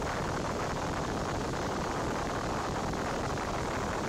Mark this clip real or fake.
fake